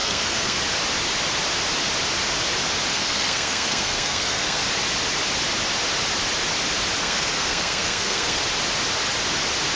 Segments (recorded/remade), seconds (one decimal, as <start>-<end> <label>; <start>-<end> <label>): 0.0-0.6 remade; 0.6-2.9 recorded; 2.9-4.6 remade; 4.6-7.0 recorded; 7.0-8.4 remade; 8.4-9.8 recorded